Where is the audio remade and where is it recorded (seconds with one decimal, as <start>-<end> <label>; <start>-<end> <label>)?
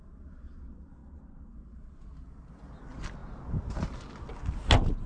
0.0-1.0 recorded; 1.0-2.5 remade; 2.5-5.1 recorded